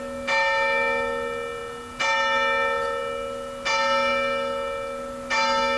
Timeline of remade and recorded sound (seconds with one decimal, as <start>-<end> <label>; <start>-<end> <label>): 0.0-5.8 recorded